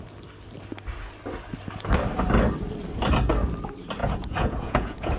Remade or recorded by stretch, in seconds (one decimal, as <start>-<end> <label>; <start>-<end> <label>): 0.0-4.0 recorded; 4.0-5.2 remade

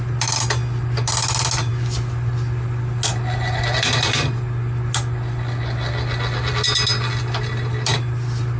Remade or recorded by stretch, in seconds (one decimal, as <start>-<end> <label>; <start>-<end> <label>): 0.0-8.6 recorded